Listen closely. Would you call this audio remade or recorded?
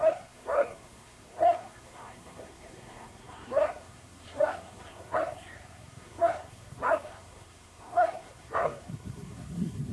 remade